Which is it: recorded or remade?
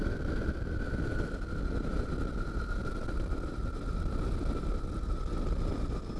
remade